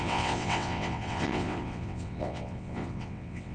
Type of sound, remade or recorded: remade